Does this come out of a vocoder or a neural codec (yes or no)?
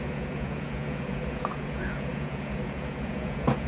yes